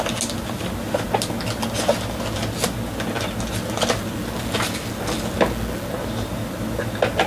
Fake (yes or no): no